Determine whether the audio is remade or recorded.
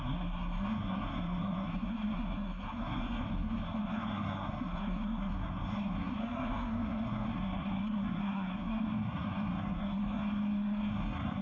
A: remade